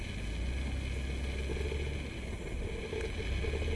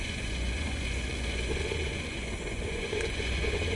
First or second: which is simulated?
second